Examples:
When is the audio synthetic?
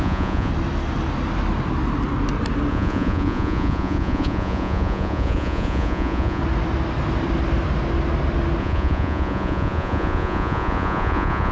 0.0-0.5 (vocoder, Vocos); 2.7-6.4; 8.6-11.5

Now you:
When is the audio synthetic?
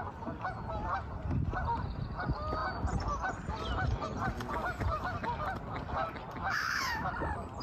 6.4-7.1 (autoencoder, DAC-VAE)